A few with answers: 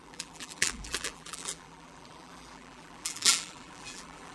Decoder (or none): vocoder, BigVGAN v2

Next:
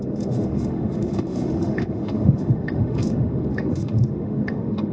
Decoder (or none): autoencoder, DAC-VAE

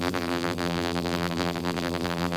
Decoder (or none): vocoder, BigVGAN v2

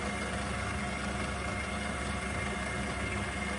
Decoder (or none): none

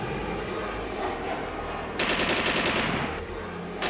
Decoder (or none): none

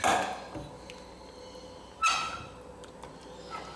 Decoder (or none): none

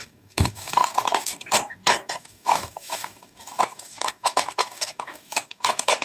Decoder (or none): codec, DAC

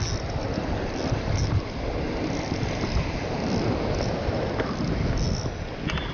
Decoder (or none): none